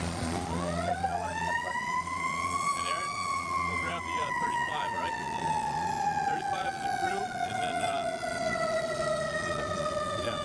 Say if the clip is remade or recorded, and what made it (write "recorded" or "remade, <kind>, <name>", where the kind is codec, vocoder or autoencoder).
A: remade, vocoder, Vocos